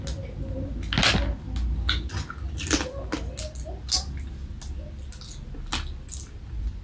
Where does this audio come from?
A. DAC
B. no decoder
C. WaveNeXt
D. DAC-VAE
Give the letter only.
B